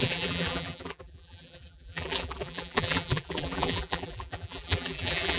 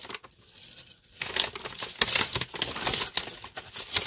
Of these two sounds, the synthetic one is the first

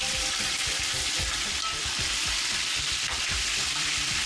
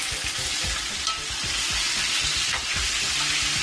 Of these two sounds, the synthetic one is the first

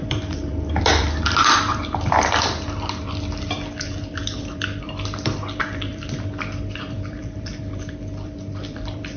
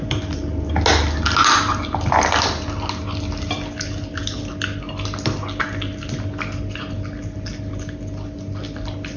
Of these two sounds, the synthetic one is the first